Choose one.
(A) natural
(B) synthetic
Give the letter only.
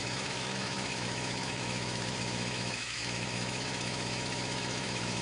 B